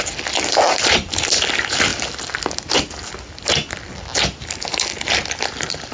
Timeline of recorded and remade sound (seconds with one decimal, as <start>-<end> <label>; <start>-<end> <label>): 0.0-1.9 remade; 1.9-5.4 recorded; 5.4-5.9 remade